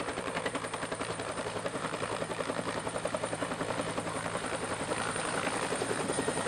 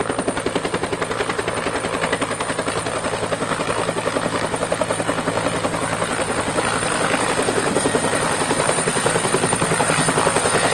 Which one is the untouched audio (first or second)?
second